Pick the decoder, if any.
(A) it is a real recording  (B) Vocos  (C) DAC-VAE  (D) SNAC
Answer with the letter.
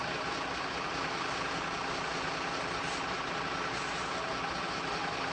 A